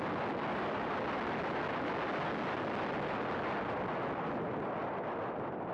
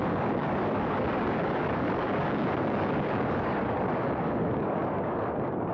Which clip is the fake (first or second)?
second